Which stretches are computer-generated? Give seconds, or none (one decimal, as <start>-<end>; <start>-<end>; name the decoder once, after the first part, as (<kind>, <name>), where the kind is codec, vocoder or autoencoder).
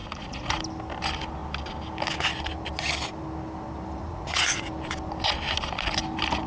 0.0-0.6 (vocoder, Vocos); 4.0-4.7